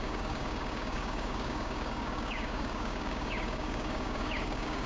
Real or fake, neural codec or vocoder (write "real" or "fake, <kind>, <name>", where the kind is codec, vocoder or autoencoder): fake, codec, DAC